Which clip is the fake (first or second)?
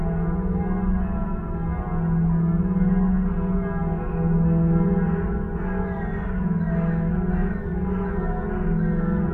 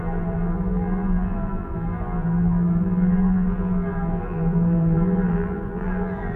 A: second